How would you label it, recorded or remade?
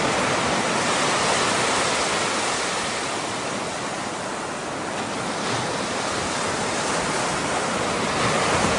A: recorded